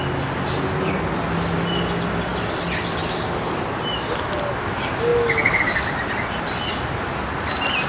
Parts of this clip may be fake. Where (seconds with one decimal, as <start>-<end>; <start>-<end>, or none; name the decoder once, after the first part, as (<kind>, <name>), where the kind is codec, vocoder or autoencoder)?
none